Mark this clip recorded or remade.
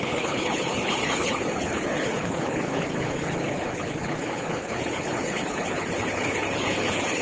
remade